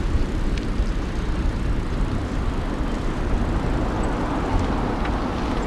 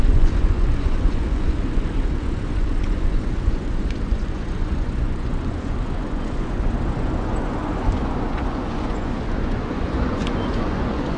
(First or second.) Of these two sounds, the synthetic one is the second